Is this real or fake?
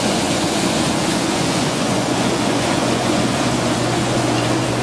fake